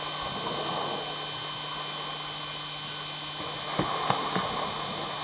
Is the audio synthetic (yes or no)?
no